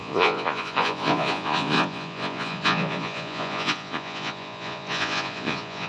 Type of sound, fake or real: fake